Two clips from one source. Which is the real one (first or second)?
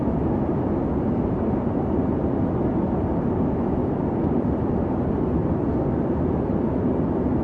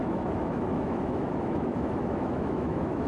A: first